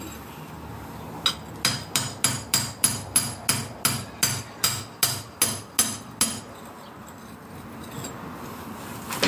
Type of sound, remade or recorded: recorded